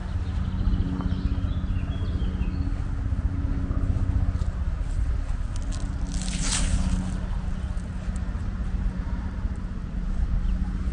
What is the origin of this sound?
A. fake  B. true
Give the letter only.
B